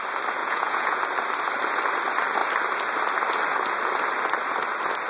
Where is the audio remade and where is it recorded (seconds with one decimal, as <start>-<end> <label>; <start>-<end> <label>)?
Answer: 0.0-0.4 recorded; 0.4-1.0 remade; 1.0-5.1 recorded